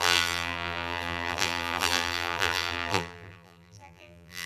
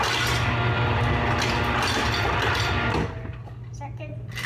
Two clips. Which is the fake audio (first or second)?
first